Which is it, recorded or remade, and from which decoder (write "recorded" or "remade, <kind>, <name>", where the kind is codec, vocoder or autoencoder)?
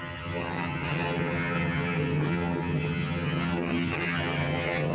remade, vocoder, HiFi-GAN